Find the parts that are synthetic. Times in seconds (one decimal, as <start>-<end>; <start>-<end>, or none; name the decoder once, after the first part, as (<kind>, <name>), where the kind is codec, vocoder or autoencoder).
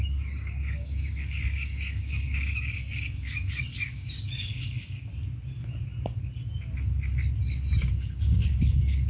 0.0-5.1 (codec, DAC); 7.9-9.1